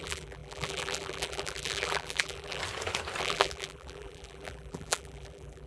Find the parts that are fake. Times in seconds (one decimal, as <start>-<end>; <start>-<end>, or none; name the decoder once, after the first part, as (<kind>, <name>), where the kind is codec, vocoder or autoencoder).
0.0-2.6 (vocoder, BigVGAN v2); 3.2-5.7